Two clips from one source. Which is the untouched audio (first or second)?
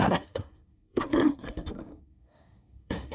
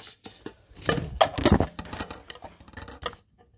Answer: second